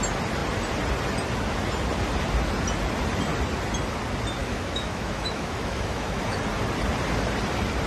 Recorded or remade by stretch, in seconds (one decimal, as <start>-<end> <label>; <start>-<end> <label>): 0.0-4.4 recorded; 4.4-6.4 remade; 6.4-7.9 recorded